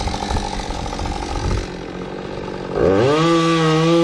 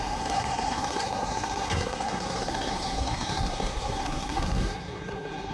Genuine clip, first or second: first